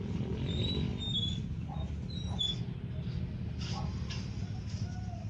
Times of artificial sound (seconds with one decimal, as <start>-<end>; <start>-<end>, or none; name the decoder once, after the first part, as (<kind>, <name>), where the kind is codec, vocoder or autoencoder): none